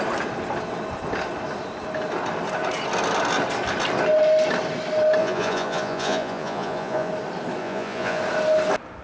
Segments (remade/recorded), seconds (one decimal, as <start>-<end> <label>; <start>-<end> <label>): 0.0-5.2 recorded; 5.2-7.1 remade; 7.1-7.6 recorded; 7.6-8.2 remade; 8.2-9.0 recorded